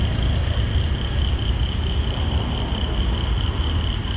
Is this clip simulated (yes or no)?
no